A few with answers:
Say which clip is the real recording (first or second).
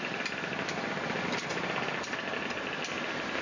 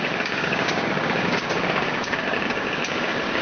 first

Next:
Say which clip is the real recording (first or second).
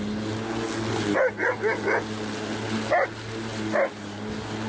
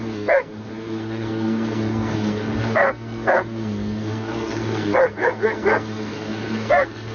first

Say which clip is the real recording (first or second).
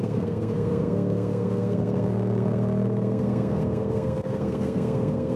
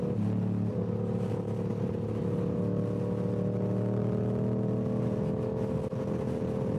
second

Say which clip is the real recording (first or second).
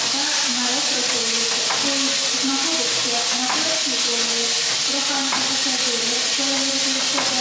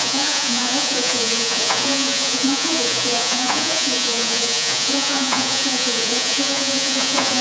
first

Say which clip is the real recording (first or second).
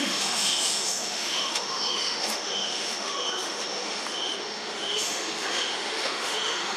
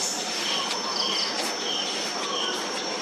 second